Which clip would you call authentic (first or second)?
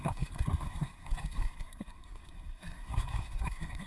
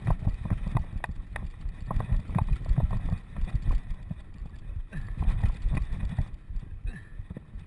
second